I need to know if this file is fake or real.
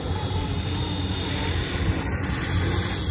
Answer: fake